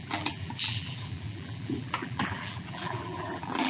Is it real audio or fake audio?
fake